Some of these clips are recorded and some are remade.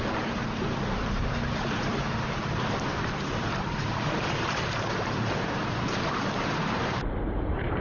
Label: remade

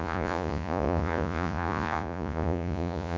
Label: remade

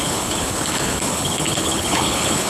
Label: remade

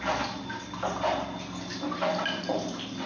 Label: recorded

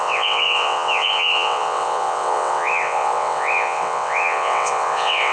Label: remade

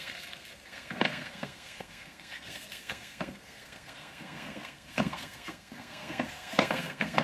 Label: remade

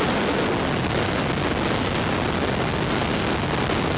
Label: recorded